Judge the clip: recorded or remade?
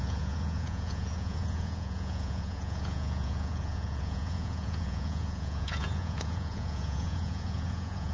remade